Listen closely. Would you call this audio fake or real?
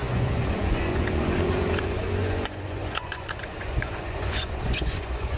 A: fake